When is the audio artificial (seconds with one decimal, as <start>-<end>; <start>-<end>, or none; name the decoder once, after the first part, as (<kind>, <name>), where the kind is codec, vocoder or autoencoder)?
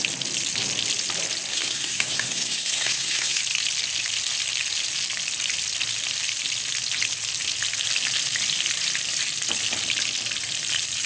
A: 1.5-3.4 (codec, SNAC)